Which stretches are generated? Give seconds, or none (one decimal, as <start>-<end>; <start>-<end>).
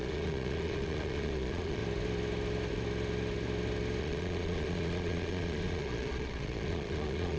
0.0-1.8; 4.0-7.4